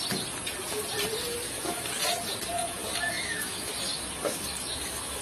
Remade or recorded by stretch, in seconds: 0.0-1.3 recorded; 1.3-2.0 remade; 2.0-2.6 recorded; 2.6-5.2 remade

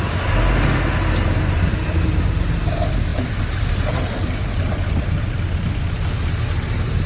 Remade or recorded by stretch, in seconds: 0.0-7.1 recorded

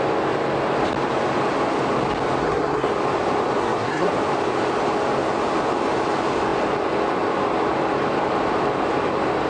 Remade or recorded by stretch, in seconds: 0.0-2.4 recorded; 2.4-2.9 remade; 2.9-3.6 recorded; 3.6-4.1 remade; 4.1-9.5 recorded

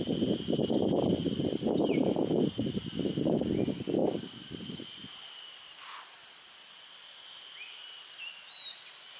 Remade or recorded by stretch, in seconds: 0.0-9.2 recorded

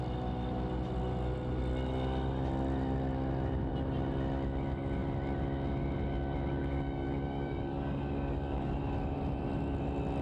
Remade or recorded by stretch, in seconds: 0.0-6.6 recorded; 6.6-8.7 remade; 8.7-10.2 recorded

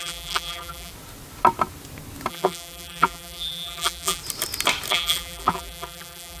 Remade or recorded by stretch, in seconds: 0.0-0.9 remade; 0.9-2.3 recorded; 2.3-4.2 remade; 4.2-4.9 recorded; 4.9-6.4 remade

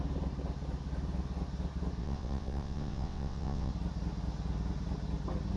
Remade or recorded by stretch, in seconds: 0.0-2.0 recorded; 2.0-3.7 remade; 3.7-5.6 recorded

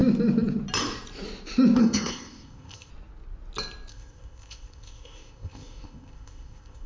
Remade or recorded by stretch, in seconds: 0.0-1.8 recorded; 1.8-2.9 remade; 2.9-3.9 recorded; 3.9-6.9 remade